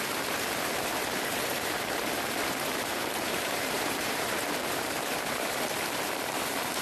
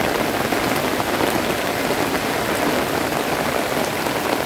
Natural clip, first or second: second